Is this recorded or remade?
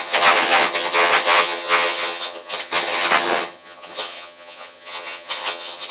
remade